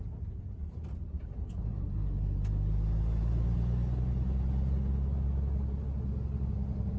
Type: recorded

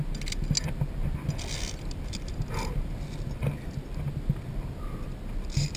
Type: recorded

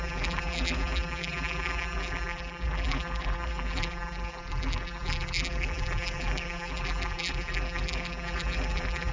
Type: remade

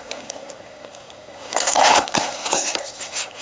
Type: remade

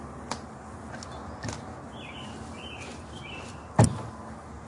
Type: recorded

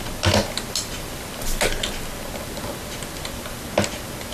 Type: recorded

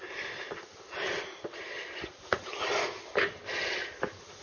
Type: recorded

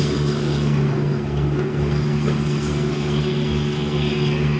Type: remade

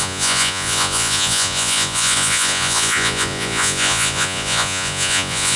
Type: remade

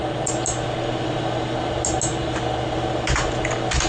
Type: recorded